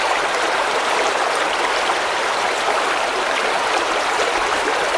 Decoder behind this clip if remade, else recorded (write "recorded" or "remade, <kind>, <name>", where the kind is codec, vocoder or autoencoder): remade, vocoder, BigVGAN v2